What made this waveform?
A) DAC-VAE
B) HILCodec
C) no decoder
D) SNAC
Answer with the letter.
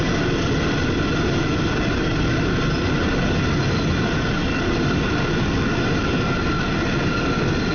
C